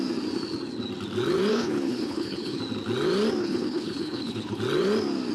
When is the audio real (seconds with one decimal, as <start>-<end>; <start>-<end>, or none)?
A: 0.0-1.5; 2.6-3.4; 4.6-5.3